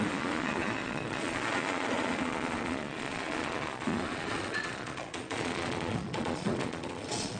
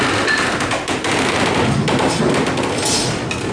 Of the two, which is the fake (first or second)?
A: first